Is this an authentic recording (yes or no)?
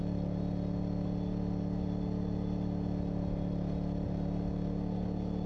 yes